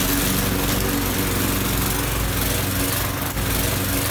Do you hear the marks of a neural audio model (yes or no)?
no